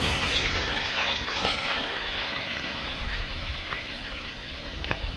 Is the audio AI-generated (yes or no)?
yes